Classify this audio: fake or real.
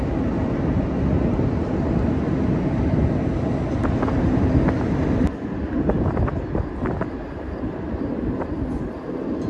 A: real